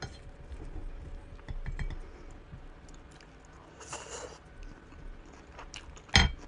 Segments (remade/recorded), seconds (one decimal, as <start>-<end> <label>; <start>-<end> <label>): 0.0-6.5 recorded